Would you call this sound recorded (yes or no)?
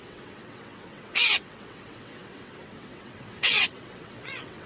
no